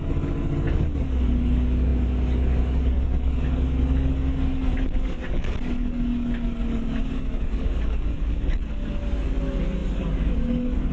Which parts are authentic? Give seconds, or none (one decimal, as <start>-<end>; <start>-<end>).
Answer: none